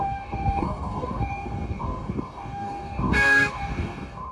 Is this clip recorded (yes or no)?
no